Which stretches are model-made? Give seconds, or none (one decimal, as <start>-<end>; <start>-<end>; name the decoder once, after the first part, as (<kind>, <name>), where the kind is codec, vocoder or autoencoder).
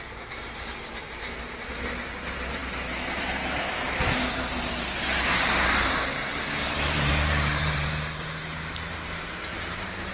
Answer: 0.0-10.1 (vocoder, BigVGAN v2)